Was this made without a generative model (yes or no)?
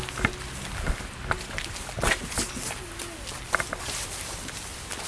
yes